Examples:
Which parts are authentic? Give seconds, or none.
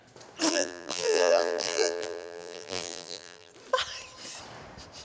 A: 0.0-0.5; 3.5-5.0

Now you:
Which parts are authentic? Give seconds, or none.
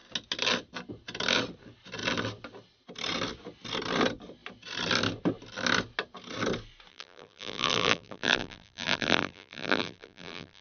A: 0.0-6.9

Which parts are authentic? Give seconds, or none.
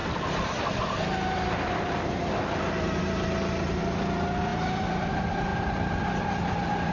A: 0.0-4.5; 5.1-5.5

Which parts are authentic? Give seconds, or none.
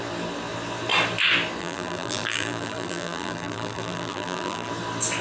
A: 0.0-1.6; 4.7-5.2